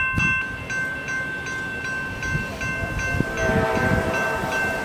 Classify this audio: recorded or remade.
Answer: recorded